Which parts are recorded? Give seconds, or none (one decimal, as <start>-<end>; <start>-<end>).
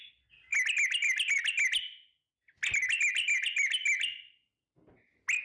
0.0-5.4